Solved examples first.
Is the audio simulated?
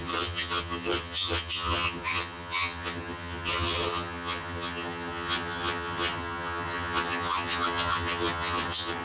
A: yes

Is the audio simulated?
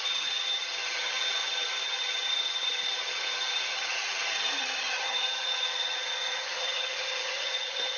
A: yes